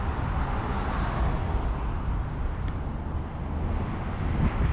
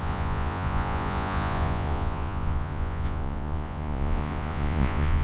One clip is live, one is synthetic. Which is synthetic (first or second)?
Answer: second